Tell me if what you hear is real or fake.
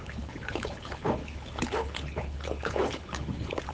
fake